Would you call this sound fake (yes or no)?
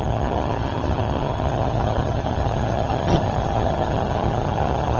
yes